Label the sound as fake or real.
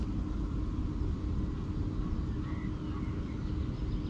real